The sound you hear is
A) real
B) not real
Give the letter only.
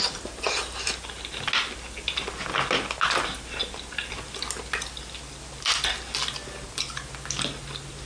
A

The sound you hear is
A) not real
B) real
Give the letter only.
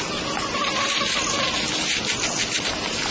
B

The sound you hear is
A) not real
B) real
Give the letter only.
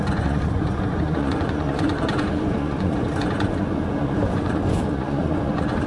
A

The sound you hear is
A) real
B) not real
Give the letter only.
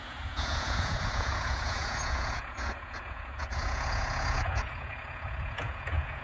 B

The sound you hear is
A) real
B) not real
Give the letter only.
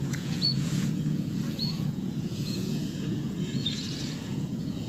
B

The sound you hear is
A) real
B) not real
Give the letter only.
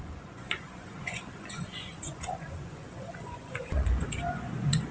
B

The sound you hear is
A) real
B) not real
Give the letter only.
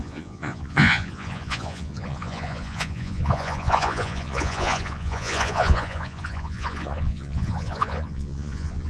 B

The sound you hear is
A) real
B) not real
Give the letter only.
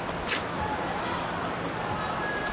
A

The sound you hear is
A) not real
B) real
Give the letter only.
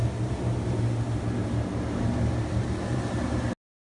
B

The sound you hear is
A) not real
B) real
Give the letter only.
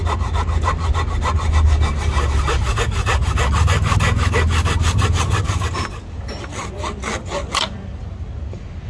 B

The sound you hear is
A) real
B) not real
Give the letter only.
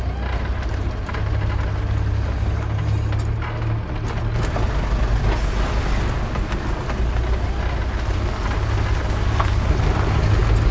A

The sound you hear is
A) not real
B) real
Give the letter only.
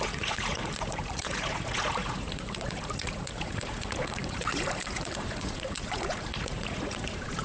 A